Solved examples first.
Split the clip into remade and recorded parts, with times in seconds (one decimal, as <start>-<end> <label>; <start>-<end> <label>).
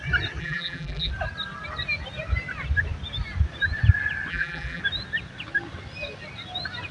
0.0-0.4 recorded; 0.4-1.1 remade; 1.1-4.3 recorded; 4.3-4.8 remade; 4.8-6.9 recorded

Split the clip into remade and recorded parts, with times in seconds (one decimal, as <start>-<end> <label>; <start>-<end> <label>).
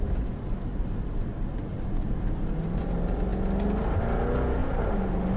0.0-1.7 recorded; 1.7-2.8 remade; 2.8-4.6 recorded; 4.6-5.4 remade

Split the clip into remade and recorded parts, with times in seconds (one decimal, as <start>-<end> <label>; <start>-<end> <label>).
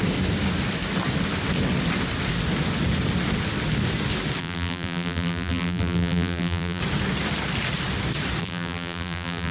0.0-4.4 recorded; 4.4-6.8 remade; 6.8-8.4 recorded; 8.4-9.5 remade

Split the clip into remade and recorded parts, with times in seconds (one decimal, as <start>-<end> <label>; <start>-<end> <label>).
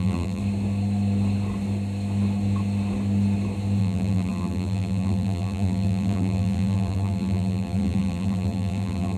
0.0-0.4 remade; 0.4-3.8 recorded; 3.8-9.2 remade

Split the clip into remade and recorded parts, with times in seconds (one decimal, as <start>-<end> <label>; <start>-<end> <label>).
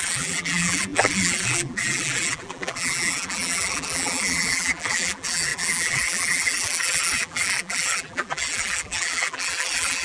0.0-10.0 remade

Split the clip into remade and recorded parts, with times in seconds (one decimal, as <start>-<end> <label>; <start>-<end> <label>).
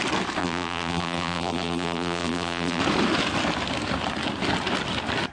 0.0-0.4 recorded; 0.4-2.8 remade; 2.8-5.3 recorded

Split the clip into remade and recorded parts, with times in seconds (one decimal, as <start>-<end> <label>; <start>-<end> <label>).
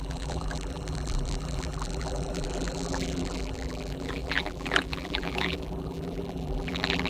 0.0-7.1 remade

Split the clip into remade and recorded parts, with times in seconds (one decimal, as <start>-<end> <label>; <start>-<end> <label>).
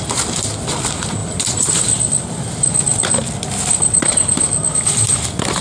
0.0-1.2 recorded; 1.2-1.8 remade; 1.8-5.6 recorded